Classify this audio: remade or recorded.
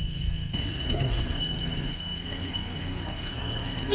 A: remade